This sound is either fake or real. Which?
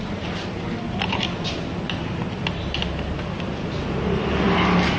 real